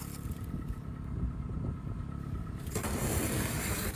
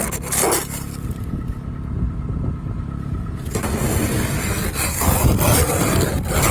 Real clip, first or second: second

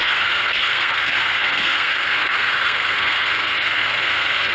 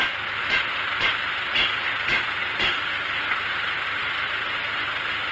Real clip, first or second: second